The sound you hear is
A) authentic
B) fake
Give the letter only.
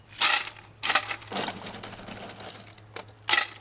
A